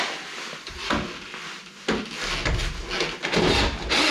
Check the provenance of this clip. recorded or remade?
recorded